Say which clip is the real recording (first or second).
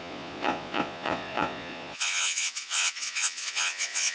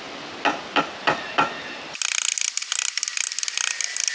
second